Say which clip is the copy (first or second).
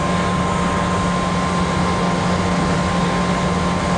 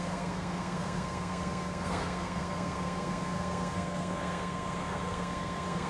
second